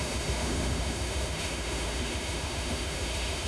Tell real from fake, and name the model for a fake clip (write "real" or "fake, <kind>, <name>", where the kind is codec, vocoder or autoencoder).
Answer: fake, autoencoder, DAC-VAE